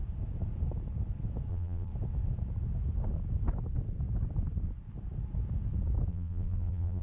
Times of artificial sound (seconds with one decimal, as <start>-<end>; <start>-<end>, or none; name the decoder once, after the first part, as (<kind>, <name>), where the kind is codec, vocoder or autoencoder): 1.5-1.9 (vocoder, BigVGAN v2); 6.1-7.0